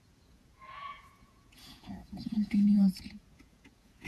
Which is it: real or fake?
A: fake